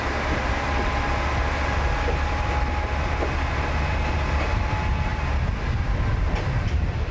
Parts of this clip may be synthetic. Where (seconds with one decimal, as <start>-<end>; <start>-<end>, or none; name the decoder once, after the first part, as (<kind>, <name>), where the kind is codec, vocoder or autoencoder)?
none